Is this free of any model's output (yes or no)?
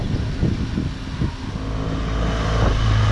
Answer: yes